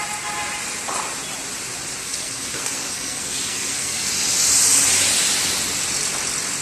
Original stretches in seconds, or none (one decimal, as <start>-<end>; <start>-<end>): 0.0-2.0; 4.1-6.6

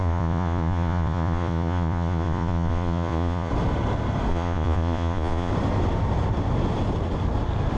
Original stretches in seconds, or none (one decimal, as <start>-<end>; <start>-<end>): 3.5-4.3; 5.5-7.8

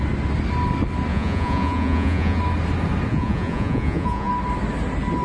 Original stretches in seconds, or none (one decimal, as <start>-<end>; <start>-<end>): 0.0-1.1; 2.4-3.1; 4.3-5.2

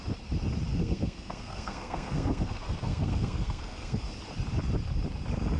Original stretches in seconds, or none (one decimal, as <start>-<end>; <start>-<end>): 0.0-0.7; 4.1-5.6

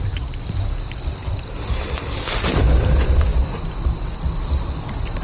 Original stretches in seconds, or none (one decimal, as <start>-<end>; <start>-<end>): 1.2-2.1

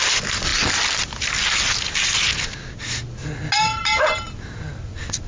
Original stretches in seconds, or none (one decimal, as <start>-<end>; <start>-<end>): 0.0-5.3

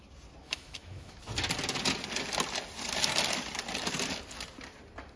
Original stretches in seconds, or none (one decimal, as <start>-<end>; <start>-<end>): 0.0-0.4; 1.2-5.2